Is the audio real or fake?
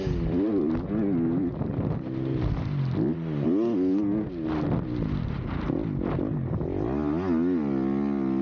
real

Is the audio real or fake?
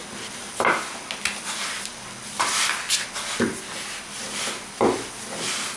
real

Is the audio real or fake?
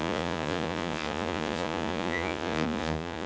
fake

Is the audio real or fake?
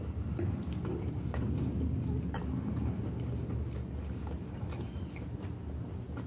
real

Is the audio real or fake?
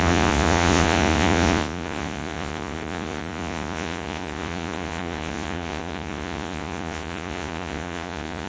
fake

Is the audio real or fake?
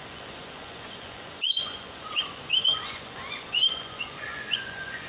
fake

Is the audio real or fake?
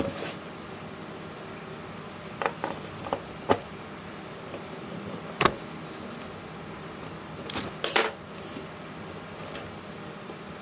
real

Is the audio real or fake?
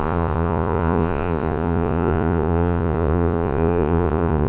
fake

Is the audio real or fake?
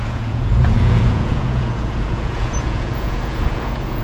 fake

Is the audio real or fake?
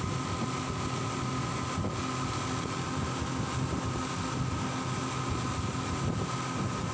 real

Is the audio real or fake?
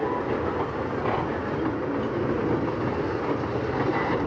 real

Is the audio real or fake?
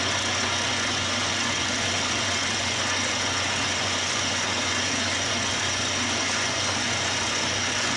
fake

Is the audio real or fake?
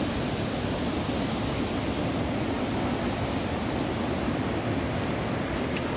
real